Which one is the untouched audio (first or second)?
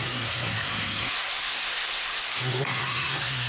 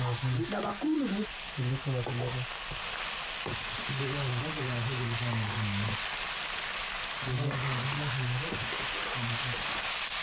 second